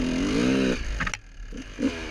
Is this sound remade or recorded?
recorded